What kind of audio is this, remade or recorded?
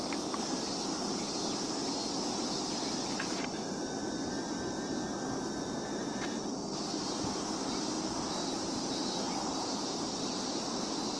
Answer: recorded